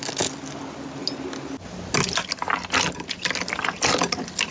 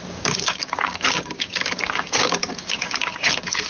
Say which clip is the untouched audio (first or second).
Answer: first